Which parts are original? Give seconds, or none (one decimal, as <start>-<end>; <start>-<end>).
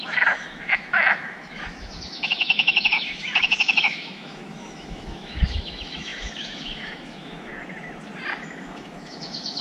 7.5-8.4